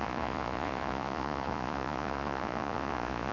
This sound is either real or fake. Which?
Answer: fake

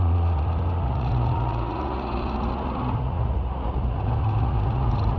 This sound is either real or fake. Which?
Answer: fake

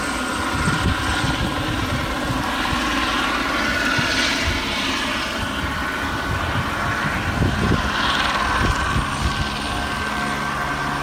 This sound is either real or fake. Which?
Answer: real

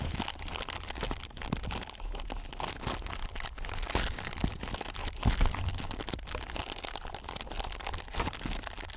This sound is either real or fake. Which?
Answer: real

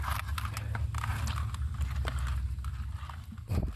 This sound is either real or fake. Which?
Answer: real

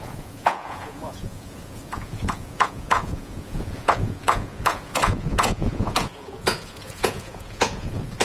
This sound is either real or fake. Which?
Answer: fake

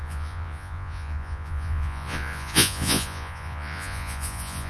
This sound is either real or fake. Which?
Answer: fake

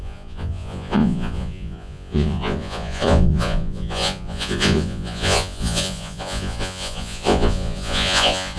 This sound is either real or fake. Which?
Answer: fake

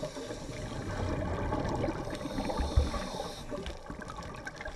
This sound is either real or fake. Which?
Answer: real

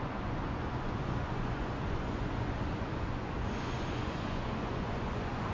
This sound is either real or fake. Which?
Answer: fake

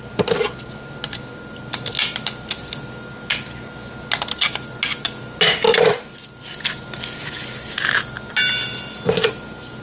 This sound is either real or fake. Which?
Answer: real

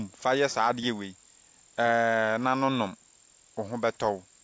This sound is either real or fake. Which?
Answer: real